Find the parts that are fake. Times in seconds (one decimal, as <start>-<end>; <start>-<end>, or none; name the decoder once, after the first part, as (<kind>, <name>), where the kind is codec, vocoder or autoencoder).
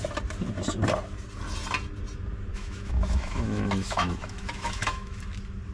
2.5-5.2 (autoencoder, DAC-VAE)